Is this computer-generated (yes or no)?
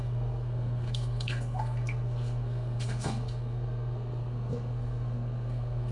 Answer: yes